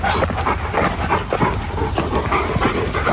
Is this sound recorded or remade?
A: recorded